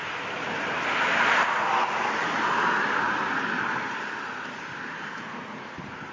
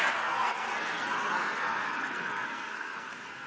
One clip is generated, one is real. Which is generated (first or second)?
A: second